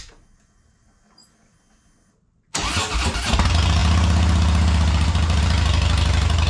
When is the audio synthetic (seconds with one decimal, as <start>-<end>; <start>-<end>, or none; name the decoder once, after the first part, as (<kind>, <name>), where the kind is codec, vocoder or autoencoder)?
none